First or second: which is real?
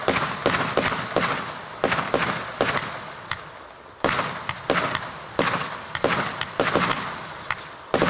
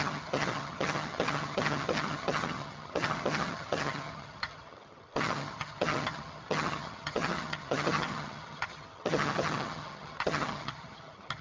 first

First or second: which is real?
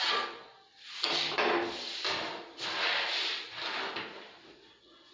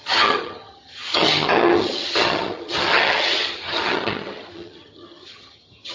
first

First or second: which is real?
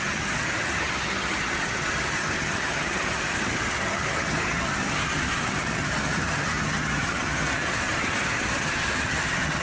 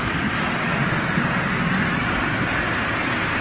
second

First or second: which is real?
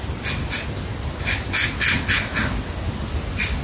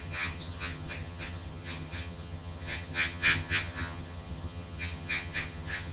first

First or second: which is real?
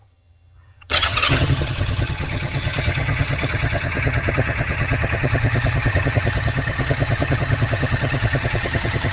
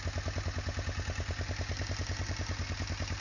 second